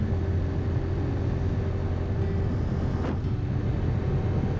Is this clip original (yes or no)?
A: yes